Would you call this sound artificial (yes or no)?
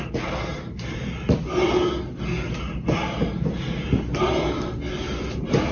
no